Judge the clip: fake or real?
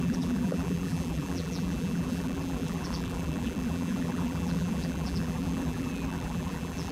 fake